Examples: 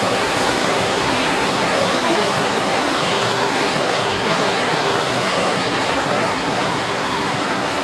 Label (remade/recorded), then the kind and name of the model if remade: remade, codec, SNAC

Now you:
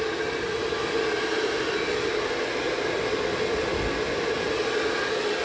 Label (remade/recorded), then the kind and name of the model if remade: recorded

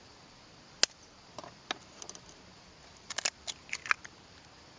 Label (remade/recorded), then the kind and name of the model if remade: recorded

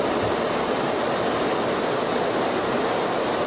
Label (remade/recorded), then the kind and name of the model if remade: recorded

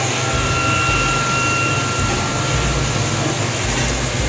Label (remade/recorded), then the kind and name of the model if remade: recorded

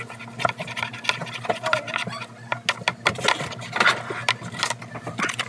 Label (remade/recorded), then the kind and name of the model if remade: recorded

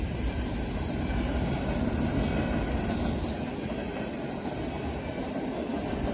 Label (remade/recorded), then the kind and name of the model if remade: recorded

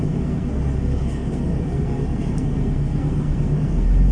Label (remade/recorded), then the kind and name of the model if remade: remade, codec, SNAC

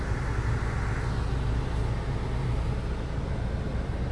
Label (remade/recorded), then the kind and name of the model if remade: recorded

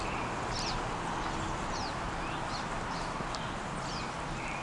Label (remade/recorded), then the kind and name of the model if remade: recorded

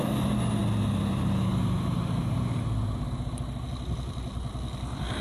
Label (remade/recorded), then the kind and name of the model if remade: recorded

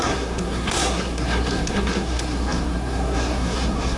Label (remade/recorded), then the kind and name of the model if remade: remade, codec, SNAC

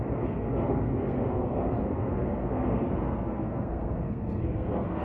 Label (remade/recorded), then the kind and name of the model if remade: remade, codec, SNAC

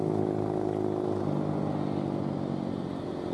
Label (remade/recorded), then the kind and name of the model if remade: recorded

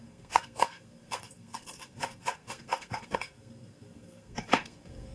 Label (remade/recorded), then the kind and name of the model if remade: remade, codec, SNAC